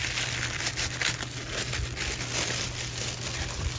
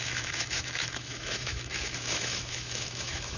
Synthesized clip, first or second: second